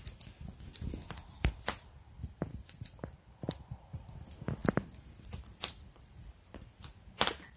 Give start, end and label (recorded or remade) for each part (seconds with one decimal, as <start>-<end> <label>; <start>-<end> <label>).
0.0-0.7 recorded; 0.7-4.1 remade; 4.1-4.6 recorded; 4.6-5.1 remade; 5.1-5.5 recorded; 5.5-6.1 remade; 6.1-7.6 recorded